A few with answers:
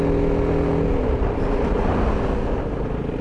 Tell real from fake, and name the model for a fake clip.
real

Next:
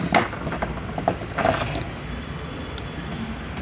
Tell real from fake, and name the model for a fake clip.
real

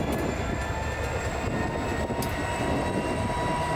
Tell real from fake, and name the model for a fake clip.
real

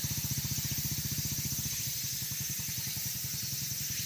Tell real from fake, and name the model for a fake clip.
real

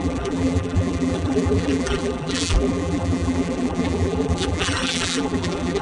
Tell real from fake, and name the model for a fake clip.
fake, vocoder, BigVGAN v2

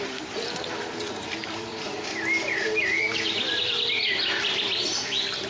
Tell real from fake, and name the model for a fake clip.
fake, vocoder, BigVGAN v2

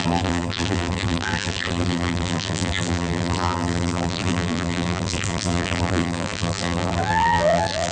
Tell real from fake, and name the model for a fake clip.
fake, vocoder, BigVGAN v2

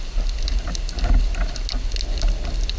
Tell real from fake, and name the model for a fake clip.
real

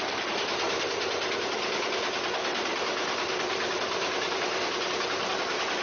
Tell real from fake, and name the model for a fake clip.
real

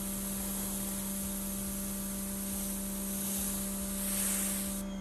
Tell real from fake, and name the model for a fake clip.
real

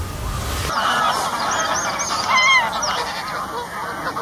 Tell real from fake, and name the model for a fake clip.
real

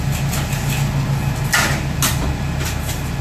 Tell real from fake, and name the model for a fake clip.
real